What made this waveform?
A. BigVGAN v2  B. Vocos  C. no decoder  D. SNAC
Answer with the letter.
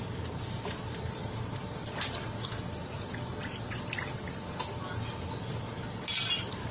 C